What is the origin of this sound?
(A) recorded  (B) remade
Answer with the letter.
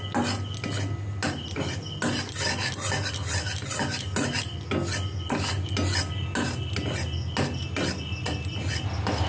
A